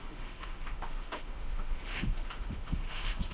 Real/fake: fake